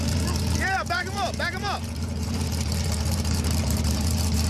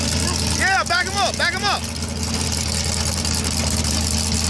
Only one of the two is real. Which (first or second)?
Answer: second